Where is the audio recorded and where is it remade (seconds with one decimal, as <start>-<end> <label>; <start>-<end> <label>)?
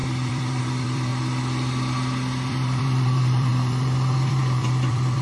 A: 0.0-1.1 remade; 1.1-2.5 recorded; 2.5-5.2 remade